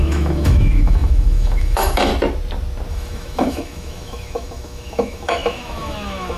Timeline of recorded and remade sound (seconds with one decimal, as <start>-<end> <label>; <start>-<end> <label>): 0.0-2.1 remade; 2.1-2.9 recorded; 2.9-6.4 remade